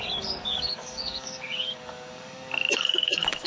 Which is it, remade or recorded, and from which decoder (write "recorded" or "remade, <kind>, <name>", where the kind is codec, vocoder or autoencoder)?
remade, codec, DAC